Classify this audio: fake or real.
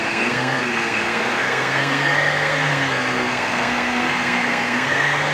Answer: fake